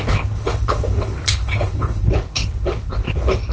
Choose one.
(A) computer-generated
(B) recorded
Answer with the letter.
A